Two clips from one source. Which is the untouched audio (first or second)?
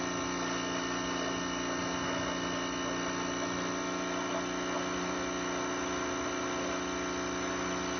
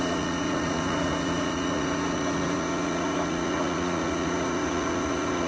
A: first